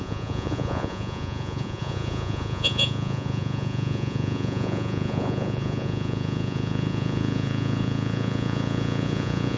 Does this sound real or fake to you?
fake